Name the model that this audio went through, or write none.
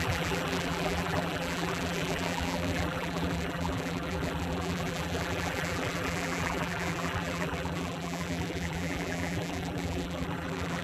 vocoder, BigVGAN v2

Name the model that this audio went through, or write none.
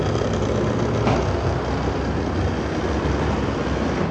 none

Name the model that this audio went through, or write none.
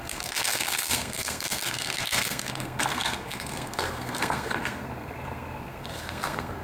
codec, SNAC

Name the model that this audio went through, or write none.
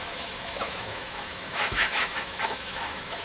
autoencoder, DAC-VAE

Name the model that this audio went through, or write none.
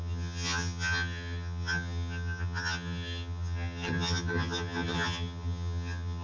vocoder, HiFi-GAN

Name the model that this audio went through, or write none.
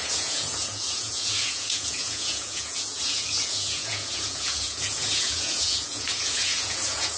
vocoder, Vocos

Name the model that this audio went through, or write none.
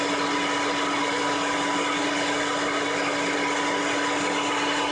none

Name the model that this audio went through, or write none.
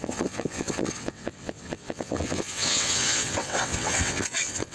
vocoder, WaveNeXt